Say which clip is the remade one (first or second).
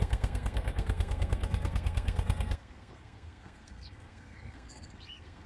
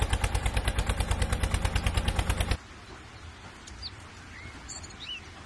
first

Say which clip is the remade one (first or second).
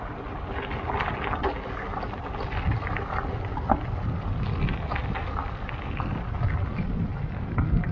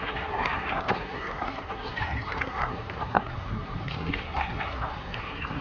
second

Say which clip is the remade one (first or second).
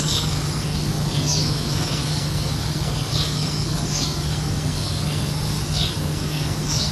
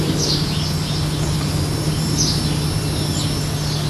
first